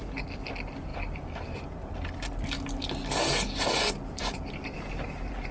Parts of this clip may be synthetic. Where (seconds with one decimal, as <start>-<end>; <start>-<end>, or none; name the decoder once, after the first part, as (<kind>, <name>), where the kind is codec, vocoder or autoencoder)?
none

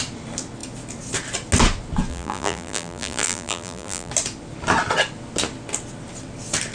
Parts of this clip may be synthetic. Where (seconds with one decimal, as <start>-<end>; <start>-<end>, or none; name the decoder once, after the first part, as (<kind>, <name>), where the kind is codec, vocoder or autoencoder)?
2.1-4.1 (vocoder, BigVGAN v2)

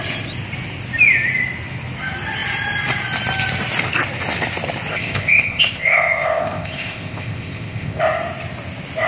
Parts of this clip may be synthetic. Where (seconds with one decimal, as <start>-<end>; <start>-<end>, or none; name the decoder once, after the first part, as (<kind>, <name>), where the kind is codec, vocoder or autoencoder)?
4.9-8.0 (codec, ZipCodec)

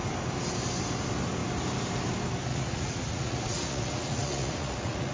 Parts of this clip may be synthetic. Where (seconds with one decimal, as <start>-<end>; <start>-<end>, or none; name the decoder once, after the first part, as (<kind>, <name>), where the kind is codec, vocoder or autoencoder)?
2.5-5.1 (vocoder, Vocos)

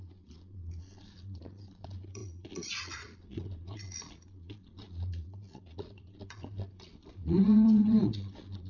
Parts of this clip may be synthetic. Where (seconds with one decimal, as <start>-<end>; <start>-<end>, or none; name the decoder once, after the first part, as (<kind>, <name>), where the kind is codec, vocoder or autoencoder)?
0.0-8.7 (vocoder, Vocos)